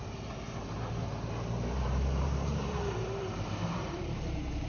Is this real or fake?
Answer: fake